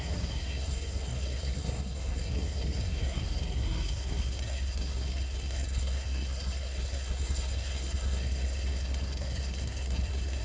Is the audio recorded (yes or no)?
no